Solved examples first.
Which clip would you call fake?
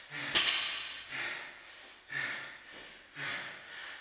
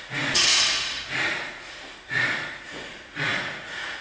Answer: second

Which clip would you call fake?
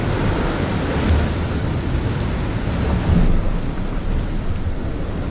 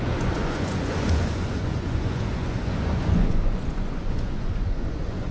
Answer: second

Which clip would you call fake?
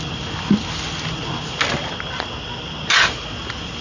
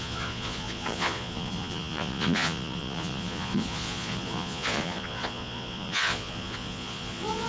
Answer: second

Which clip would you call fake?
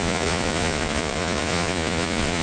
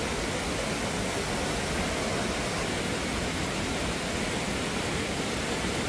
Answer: first